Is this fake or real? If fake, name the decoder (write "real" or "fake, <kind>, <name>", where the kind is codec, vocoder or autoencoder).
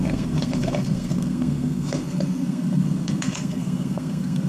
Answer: fake, codec, SNAC